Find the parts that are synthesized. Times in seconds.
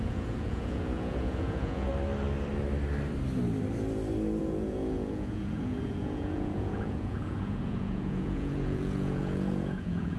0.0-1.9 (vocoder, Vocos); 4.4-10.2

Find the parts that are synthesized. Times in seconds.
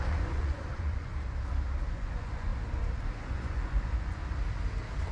0.0-1.1 (vocoder, Vocos); 1.9-2.5; 3.0-4.2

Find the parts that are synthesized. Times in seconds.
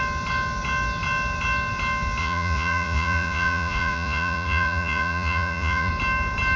2.2-5.9 (vocoder, Vocos)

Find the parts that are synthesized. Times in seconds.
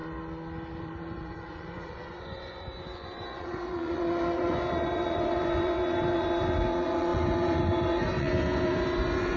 0.8-9.4 (vocoder, Vocos)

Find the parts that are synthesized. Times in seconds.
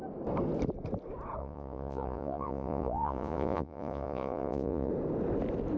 1.4-4.9 (vocoder, Vocos)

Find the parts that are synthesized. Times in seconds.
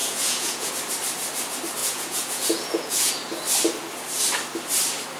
0.0-0.7 (vocoder, Vocos); 1.8-3.1